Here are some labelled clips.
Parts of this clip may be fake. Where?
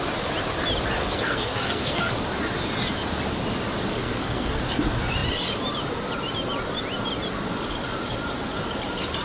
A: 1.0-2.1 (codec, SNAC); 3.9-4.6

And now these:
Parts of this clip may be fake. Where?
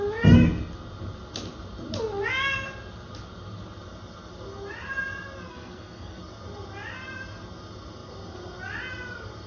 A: 5.5-6.2 (codec, SNAC)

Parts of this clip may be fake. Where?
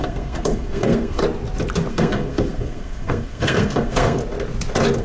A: 0.0-1.2 (codec, SNAC); 1.9-4.2